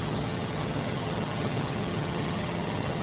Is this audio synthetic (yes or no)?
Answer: yes